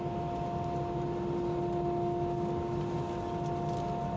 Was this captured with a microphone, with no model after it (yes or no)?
yes